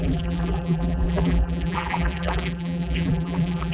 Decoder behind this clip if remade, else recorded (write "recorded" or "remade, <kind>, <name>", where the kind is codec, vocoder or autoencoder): remade, vocoder, BigVGAN v2